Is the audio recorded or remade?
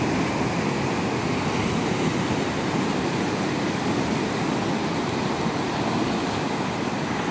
recorded